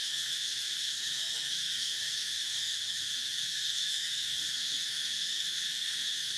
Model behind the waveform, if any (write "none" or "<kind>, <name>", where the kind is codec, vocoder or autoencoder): codec, SNAC